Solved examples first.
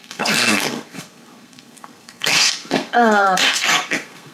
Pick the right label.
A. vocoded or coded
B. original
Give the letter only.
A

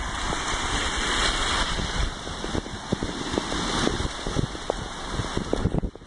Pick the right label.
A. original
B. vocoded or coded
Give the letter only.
A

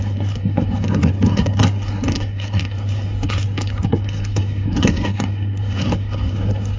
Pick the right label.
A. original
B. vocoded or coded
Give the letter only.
B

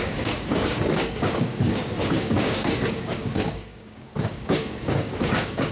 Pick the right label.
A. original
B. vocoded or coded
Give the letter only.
B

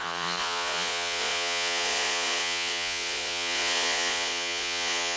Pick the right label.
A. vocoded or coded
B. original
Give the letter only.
A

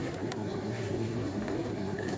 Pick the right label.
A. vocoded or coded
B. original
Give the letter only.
A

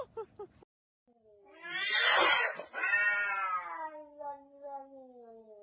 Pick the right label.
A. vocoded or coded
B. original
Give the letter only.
B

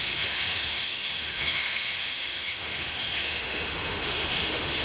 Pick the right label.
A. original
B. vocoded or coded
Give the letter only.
B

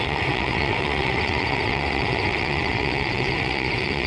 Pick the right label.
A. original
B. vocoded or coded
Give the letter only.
B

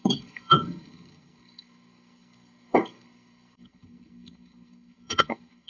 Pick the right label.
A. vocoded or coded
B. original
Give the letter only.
A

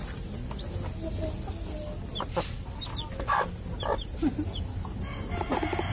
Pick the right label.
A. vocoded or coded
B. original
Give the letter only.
B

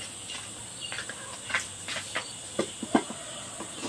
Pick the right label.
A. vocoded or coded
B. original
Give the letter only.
B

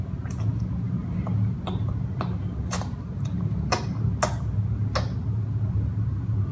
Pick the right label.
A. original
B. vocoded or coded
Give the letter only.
A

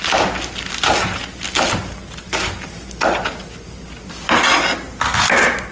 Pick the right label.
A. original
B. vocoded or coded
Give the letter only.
A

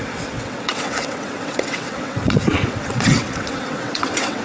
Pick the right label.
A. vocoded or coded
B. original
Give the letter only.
A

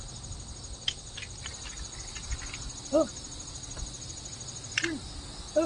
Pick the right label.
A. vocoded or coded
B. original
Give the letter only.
B